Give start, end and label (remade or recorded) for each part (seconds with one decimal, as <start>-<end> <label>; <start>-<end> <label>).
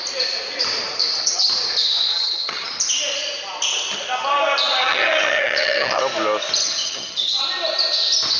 0.0-2.1 recorded; 2.1-2.7 remade; 2.7-4.8 recorded; 4.8-6.0 remade; 6.0-6.6 recorded; 6.6-7.4 remade; 7.4-8.4 recorded